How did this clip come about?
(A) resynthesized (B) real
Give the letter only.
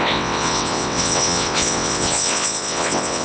A